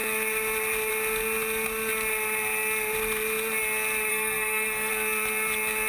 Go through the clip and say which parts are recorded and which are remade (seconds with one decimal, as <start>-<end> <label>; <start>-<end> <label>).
0.0-4.1 recorded; 4.1-4.9 remade; 4.9-5.9 recorded